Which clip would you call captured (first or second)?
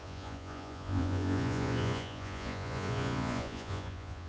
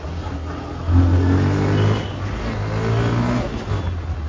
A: second